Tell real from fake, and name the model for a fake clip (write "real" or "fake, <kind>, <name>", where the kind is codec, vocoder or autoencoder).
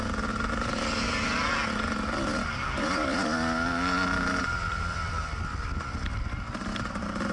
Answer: real